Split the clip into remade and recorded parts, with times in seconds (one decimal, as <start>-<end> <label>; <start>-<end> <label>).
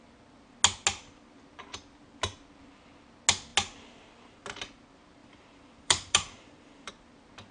0.0-5.2 recorded; 5.2-6.9 remade; 6.9-7.5 recorded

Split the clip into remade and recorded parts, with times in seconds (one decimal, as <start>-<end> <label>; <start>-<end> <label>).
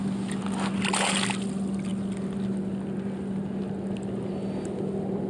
0.0-5.3 recorded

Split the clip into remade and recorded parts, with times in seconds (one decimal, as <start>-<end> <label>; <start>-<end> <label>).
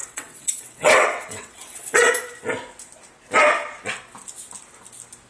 0.0-2.1 remade; 2.1-5.3 recorded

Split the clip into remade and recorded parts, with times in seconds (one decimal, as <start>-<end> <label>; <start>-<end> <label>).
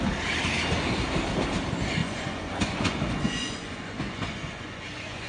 0.0-2.0 recorded; 2.0-5.3 remade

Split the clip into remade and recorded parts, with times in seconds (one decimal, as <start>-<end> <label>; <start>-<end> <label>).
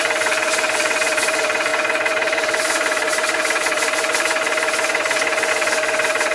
0.0-6.3 remade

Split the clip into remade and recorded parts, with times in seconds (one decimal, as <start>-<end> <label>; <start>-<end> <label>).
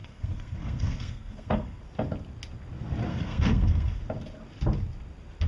0.0-1.8 remade; 1.8-3.1 recorded; 3.1-4.0 remade; 4.0-5.5 recorded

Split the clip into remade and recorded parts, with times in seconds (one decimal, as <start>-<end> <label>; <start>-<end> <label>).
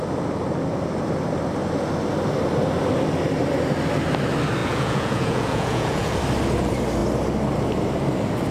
0.0-4.6 recorded; 4.6-6.2 remade; 6.2-8.5 recorded